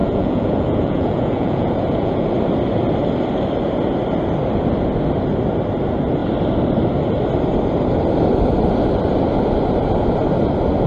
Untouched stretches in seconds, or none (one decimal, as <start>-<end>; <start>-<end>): 2.3-10.9